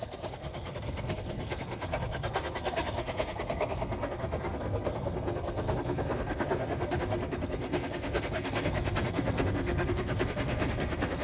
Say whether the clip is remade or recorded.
remade